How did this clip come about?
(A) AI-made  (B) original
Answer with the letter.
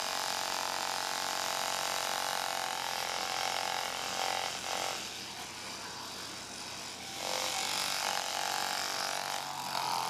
B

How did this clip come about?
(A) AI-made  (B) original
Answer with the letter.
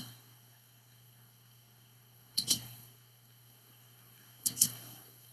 A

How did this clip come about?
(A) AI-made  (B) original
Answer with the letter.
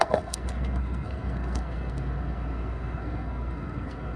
A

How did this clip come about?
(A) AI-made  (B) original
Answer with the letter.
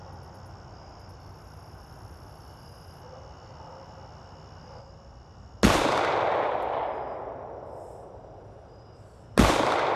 B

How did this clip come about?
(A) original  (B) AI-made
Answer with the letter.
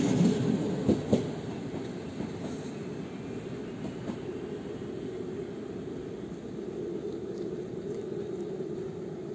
A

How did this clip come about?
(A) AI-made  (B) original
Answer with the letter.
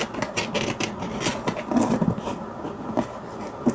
B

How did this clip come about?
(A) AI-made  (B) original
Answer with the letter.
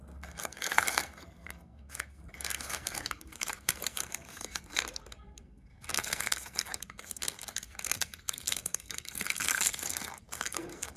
A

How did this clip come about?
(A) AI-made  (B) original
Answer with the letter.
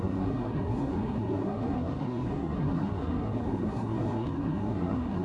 A